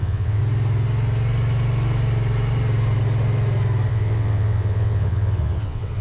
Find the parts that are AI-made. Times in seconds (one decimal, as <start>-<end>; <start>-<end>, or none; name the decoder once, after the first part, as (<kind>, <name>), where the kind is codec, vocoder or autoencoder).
0.0-0.4 (vocoder, WaveNeXt); 3.9-6.0

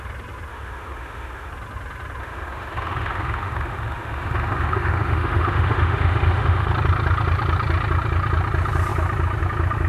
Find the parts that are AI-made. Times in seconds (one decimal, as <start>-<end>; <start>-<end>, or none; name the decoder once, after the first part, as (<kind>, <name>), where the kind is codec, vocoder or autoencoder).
0.5-1.5 (autoencoder, DAC-VAE); 2.2-6.7

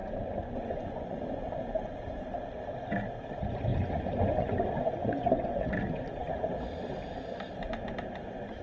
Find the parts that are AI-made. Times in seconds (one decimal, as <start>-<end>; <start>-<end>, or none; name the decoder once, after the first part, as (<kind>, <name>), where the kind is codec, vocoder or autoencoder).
0.0-1.4 (vocoder, Vocos); 3.7-5.7

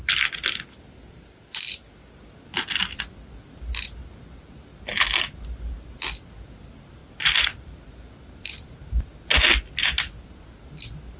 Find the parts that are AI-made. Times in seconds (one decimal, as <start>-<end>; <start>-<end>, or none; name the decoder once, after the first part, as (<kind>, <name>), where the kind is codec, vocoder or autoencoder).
none

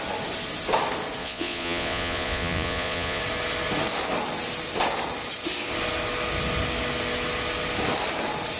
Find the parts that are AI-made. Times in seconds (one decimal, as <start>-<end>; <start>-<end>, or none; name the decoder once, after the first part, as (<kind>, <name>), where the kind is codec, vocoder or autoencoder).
1.2-3.2 (vocoder, Vocos)

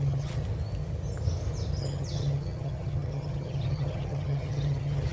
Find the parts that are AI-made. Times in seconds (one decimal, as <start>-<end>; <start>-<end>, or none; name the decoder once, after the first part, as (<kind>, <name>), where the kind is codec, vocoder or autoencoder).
0.0-0.4 (vocoder, HiFi-GAN); 1.8-5.1